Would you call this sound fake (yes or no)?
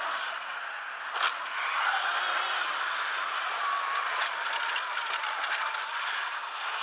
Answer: no